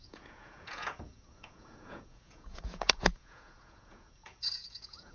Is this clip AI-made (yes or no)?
yes